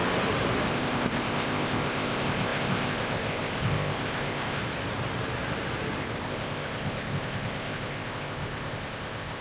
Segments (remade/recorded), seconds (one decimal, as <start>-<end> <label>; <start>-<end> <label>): 0.0-0.7 recorded; 0.7-4.6 remade; 4.6-6.0 recorded; 6.0-9.4 remade